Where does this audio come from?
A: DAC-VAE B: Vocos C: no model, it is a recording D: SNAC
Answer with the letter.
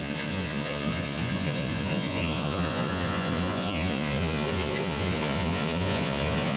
B